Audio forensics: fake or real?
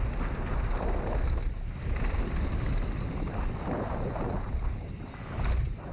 real